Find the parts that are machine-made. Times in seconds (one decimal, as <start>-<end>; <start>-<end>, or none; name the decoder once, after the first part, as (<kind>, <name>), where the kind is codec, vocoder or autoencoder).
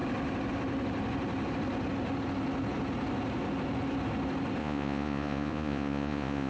4.6-6.5 (vocoder, Vocos)